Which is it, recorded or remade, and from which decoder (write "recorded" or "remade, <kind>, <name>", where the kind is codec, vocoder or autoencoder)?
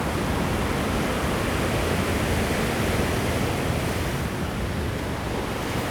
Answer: recorded